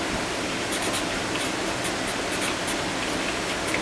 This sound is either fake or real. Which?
real